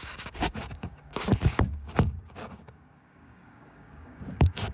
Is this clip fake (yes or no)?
yes